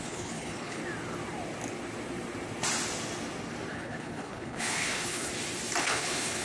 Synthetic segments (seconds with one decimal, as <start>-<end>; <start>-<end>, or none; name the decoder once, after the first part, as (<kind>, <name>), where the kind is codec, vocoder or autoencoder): 0.0-0.8 (codec, HILCodec); 3.7-5.3; 5.8-6.4